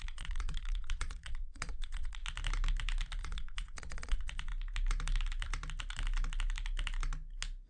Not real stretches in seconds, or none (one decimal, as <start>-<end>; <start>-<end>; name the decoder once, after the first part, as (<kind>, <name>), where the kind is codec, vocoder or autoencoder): 0.0-2.2 (vocoder, Vocos); 3.2-4.5